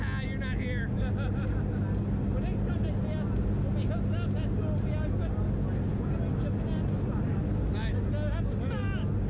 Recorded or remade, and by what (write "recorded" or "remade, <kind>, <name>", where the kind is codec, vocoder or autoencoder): recorded